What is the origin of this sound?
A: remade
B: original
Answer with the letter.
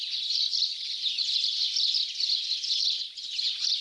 A